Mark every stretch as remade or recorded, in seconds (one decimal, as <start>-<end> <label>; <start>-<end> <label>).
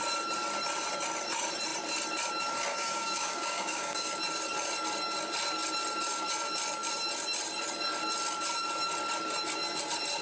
0.0-2.7 recorded; 2.7-4.1 remade; 4.1-10.2 recorded